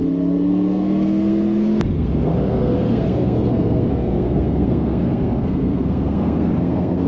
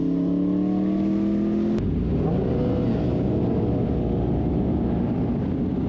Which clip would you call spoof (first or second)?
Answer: first